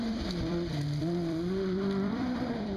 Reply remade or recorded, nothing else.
remade